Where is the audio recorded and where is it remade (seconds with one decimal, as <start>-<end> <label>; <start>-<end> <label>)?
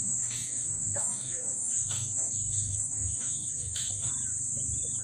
0.0-4.1 remade; 4.1-5.0 recorded